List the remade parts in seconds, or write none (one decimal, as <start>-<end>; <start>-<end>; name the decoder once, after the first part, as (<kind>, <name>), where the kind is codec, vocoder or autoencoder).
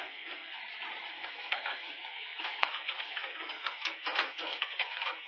0.0-0.6 (codec, SNAC); 1.1-5.3